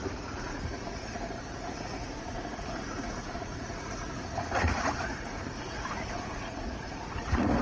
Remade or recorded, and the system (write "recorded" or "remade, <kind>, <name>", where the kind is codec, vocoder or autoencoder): remade, vocoder, Vocos